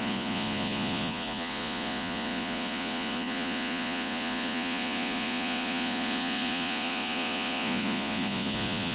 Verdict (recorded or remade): remade